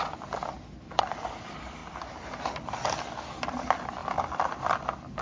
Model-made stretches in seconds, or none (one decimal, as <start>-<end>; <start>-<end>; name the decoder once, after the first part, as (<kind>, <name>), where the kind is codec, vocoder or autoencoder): none